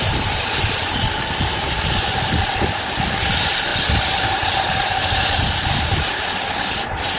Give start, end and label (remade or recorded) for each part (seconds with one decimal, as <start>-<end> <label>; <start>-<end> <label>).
0.0-7.2 recorded